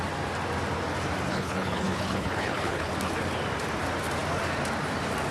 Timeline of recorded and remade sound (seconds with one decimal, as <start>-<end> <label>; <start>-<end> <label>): 0.0-1.3 recorded; 1.3-2.9 remade; 2.9-5.3 recorded